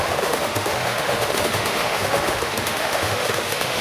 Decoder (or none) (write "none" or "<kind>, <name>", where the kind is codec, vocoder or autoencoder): autoencoder, DAC-VAE